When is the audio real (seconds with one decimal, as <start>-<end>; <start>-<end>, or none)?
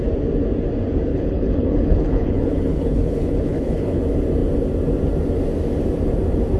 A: 0.0-1.1; 4.0-6.6